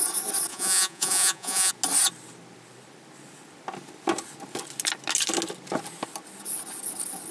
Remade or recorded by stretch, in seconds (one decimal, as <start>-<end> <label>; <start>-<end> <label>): 0.0-0.5 recorded; 0.5-1.7 remade; 1.7-7.3 recorded